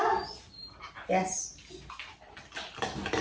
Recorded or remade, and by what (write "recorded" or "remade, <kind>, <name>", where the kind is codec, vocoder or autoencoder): recorded